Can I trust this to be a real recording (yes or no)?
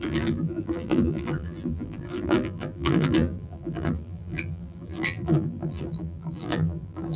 no